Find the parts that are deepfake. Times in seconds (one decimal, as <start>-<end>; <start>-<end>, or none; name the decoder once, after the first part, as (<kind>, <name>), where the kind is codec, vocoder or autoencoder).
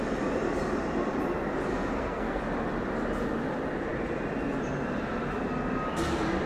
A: 1.7-2.4 (codec, SNAC)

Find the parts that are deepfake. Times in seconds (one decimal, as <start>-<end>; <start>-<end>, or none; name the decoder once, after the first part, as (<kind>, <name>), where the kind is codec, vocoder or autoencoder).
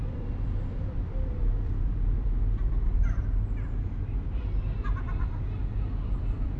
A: 0.0-6.6 (vocoder, BigVGAN v2)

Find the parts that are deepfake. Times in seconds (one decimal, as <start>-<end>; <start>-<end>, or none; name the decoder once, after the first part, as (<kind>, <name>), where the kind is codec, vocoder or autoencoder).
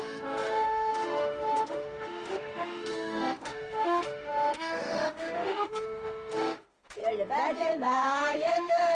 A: 0.0-7.0 (autoencoder, DAC-VAE); 7.7-8.9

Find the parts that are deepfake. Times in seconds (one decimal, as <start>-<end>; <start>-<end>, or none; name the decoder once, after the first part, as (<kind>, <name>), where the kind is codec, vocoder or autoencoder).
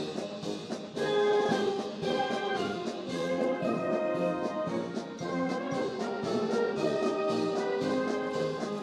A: 1.3-4.0 (vocoder, Vocos); 5.3-7.2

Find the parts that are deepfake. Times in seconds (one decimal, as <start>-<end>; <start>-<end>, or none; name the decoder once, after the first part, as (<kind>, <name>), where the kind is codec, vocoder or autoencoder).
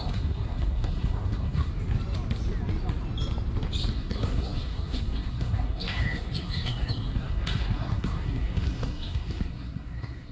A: 0.0-1.7 (codec, SNAC); 3.9-10.3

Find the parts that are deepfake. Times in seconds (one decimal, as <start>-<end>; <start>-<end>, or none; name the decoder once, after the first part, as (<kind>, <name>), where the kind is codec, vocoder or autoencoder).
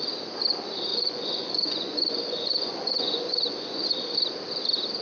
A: 0.9-3.9 (vocoder, Vocos)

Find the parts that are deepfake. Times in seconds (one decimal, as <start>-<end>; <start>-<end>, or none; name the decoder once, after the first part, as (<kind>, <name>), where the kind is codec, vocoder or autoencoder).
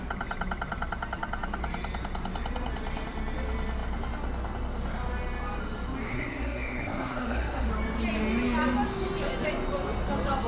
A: 6.0-7.7 (codec, SNAC)